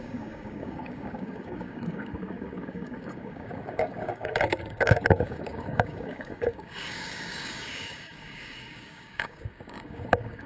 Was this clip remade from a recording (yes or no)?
yes